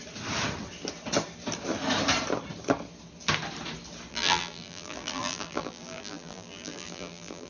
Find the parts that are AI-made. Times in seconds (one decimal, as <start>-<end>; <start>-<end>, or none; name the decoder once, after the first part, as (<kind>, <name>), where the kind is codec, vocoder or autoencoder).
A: 4.1-7.5 (vocoder, BigVGAN v2)